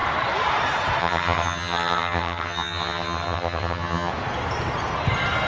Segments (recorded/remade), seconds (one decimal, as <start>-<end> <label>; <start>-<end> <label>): 0.0-1.0 recorded; 1.0-4.1 remade; 4.1-5.5 recorded